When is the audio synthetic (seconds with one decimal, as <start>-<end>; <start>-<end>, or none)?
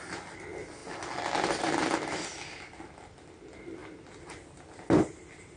none